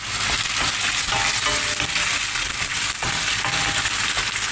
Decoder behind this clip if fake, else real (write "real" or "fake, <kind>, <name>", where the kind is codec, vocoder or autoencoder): real